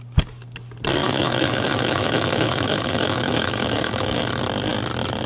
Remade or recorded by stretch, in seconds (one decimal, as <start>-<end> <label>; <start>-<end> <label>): 0.0-1.0 recorded; 1.0-4.2 remade; 4.2-5.3 recorded